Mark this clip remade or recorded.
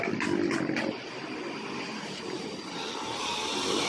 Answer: recorded